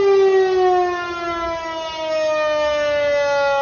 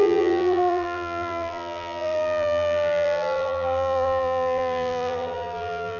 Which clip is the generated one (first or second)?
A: second